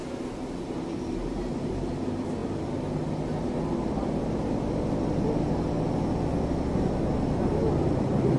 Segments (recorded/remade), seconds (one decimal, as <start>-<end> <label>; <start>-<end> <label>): 0.0-8.4 recorded